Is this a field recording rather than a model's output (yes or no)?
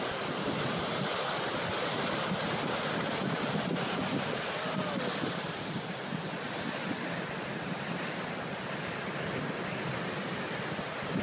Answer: yes